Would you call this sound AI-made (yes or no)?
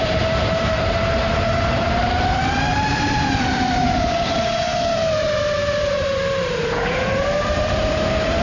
yes